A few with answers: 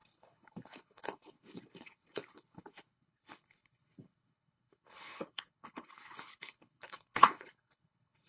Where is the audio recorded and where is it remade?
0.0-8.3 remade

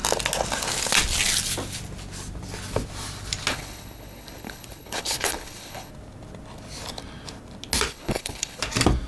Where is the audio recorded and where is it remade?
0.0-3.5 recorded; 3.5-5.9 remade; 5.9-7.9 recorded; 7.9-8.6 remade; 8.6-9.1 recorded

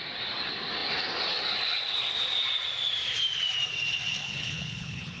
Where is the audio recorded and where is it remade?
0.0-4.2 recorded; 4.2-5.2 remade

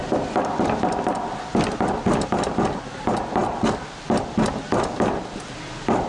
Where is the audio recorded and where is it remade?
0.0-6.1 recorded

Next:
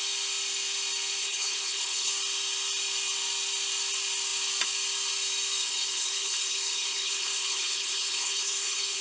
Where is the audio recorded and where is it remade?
0.0-1.2 recorded; 1.2-2.1 remade; 2.1-5.6 recorded; 5.6-9.0 remade

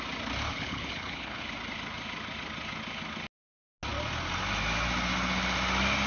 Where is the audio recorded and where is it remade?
0.0-0.5 recorded; 0.5-1.4 remade; 1.4-6.1 recorded

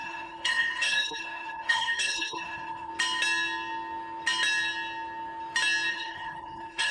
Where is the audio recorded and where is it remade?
0.0-2.9 remade; 2.9-5.9 recorded; 5.9-6.9 remade

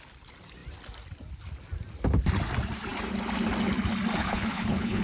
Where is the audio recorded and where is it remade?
0.0-4.2 recorded; 4.2-5.0 remade